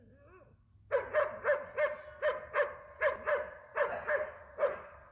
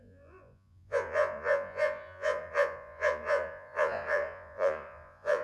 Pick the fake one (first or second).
second